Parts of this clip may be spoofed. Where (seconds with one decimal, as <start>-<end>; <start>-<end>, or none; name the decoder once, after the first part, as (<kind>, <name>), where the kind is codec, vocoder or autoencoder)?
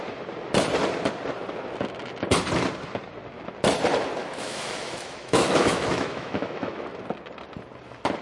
4.2-6.8 (autoencoder, DAC-VAE)